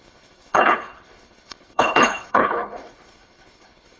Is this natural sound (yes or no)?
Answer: no